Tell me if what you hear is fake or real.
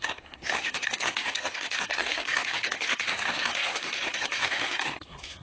fake